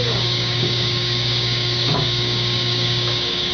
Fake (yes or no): yes